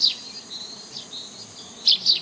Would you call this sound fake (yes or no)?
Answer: no